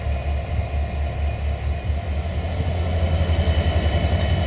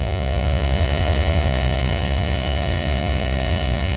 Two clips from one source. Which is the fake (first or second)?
second